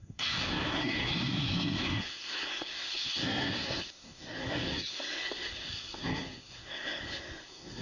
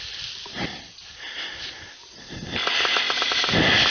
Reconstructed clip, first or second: first